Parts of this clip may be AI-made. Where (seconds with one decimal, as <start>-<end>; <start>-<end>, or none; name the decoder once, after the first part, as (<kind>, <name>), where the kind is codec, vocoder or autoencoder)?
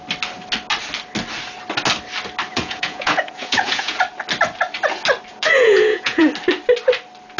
2.5-4.0 (vocoder, Vocos); 5.3-6.3